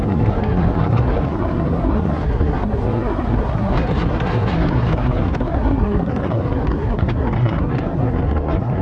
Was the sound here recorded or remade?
remade